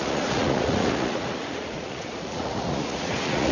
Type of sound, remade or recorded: remade